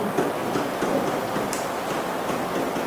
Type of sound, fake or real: real